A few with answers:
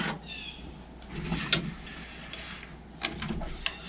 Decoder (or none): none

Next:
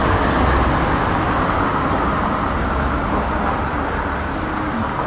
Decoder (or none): none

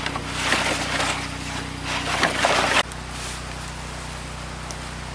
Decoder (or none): none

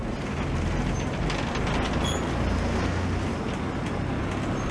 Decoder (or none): none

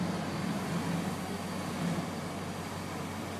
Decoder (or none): none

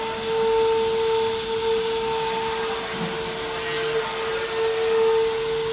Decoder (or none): none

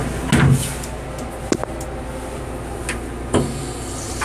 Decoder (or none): none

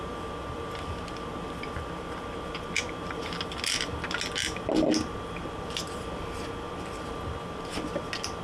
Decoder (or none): none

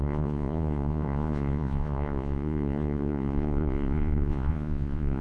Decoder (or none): vocoder, Vocos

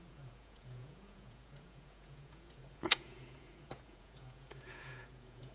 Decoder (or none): vocoder, Vocos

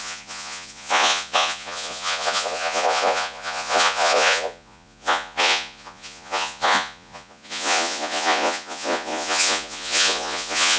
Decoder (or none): vocoder, Vocos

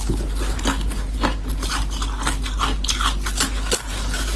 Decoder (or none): none